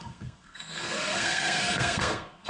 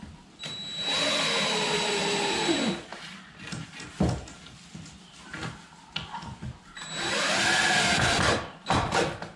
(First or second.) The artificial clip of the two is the first